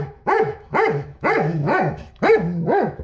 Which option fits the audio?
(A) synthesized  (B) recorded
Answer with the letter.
A